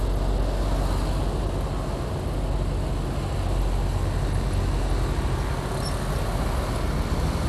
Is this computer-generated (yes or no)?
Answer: no